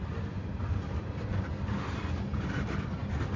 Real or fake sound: real